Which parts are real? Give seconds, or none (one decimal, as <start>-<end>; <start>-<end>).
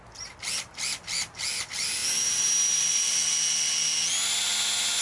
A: 0.0-5.0